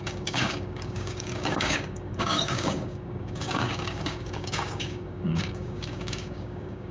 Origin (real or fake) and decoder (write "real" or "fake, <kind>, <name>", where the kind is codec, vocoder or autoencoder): fake, codec, DAC